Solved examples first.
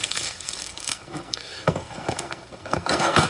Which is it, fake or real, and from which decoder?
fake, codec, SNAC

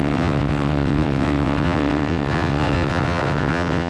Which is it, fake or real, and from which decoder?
fake, vocoder, WaveNeXt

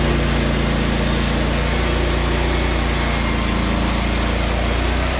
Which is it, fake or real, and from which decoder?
real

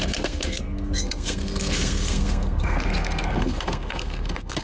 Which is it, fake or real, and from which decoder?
fake, codec, SNAC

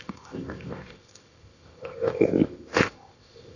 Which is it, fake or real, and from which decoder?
fake, codec, ZipCodec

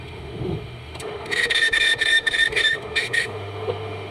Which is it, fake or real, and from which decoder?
fake, autoencoder, DAC-VAE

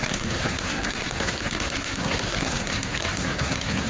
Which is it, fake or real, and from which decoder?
fake, codec, SNAC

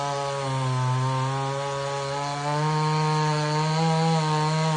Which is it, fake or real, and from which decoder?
real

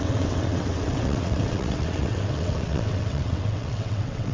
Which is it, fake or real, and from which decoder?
fake, vocoder, WaveNeXt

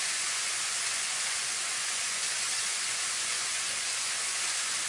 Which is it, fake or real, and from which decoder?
fake, vocoder, Vocos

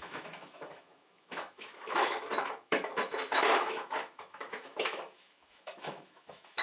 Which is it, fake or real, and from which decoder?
fake, autoencoder, DAC-VAE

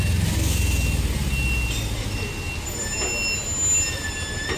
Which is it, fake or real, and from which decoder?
real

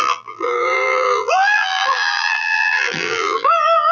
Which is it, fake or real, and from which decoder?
fake, vocoder, BigVGAN v2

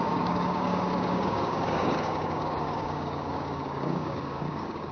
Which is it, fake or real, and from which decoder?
fake, codec, DAC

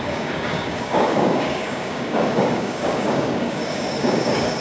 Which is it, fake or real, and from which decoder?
fake, codec, DAC